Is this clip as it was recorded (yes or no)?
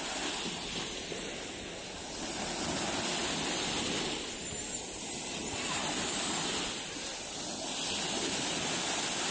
yes